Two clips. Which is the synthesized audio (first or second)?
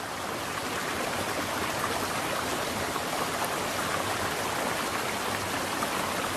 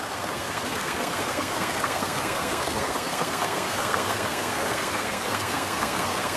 second